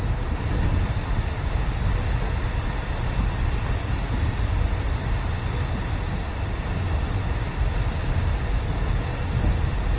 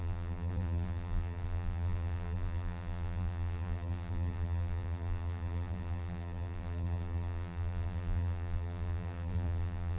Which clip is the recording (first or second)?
first